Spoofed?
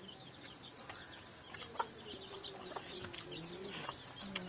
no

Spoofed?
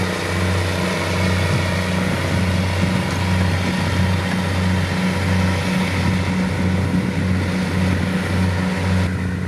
no